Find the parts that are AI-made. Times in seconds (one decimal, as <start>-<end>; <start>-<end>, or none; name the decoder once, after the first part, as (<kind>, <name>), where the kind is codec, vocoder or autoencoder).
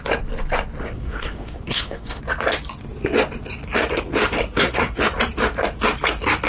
0.8-2.2 (codec, SNAC); 4.3-5.0